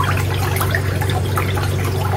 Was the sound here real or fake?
real